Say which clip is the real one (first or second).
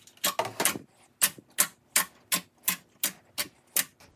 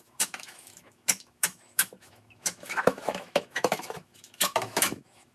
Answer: first